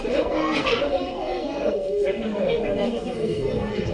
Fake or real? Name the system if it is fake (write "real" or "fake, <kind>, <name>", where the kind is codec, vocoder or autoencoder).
fake, codec, SNAC